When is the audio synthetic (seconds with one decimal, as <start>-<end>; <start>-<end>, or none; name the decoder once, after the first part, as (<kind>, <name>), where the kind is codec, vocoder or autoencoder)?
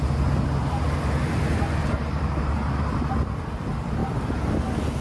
0.6-1.1 (vocoder, BigVGAN v2); 1.8-2.8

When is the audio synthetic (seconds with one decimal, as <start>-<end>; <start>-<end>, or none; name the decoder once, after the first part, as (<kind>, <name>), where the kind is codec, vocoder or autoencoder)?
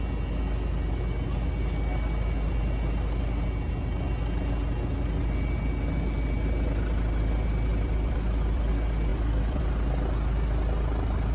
7.7-8.7 (vocoder, BigVGAN v2); 9.1-9.6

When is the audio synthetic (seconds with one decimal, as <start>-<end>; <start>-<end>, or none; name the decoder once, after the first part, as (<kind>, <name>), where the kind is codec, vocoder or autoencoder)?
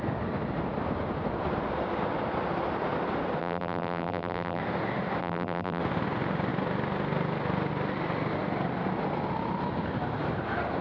3.4-4.6 (vocoder, BigVGAN v2); 5.2-5.8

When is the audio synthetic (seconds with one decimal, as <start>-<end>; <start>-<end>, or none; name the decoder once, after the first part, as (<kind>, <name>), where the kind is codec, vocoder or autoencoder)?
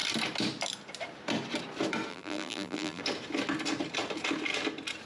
2.1-3.0 (vocoder, BigVGAN v2)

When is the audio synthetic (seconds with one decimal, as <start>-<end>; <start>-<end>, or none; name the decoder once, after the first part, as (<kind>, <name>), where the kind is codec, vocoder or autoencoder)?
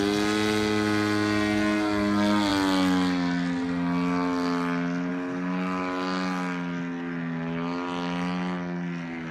none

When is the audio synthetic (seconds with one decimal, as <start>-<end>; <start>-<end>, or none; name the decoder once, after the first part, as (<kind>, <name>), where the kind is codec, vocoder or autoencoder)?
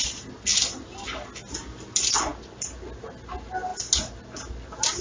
none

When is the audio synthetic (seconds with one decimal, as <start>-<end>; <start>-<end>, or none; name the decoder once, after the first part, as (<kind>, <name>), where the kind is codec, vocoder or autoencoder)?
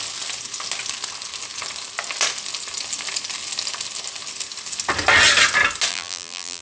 5.9-6.6 (vocoder, BigVGAN v2)